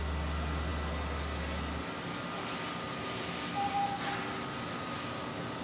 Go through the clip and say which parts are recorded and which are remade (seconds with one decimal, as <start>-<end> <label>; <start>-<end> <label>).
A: 0.0-5.6 recorded